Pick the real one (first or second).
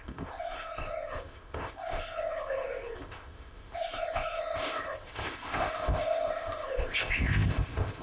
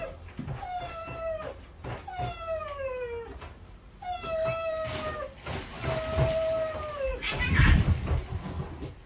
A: second